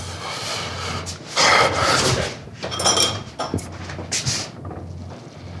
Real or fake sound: real